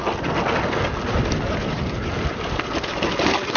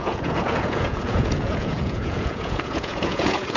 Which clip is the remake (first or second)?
second